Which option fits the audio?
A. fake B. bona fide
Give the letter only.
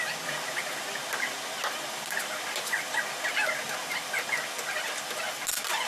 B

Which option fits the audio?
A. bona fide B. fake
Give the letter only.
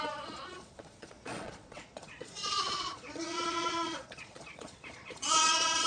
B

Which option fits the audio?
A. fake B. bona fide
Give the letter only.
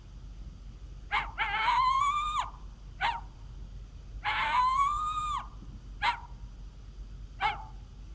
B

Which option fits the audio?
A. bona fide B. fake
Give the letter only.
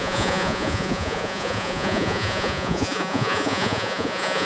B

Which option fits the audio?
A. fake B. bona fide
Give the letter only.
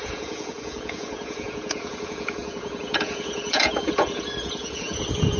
A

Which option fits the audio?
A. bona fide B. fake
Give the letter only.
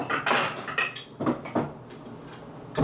A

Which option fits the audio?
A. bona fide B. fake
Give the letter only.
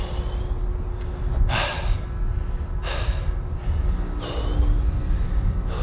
A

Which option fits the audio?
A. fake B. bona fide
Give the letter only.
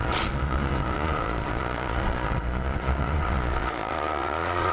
A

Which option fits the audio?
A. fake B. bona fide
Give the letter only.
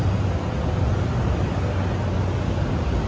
B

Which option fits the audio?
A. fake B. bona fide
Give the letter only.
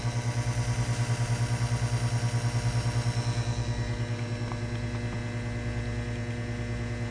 B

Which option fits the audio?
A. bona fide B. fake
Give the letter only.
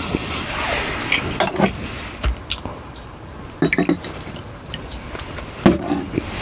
A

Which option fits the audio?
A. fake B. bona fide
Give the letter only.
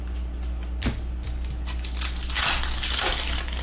B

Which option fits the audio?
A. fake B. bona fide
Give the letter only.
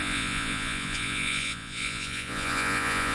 A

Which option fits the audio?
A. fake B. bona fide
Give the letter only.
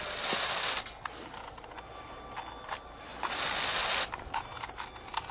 B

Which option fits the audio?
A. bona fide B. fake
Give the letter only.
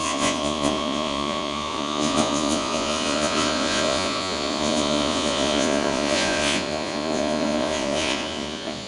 B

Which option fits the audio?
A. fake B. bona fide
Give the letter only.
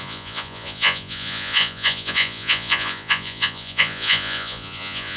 A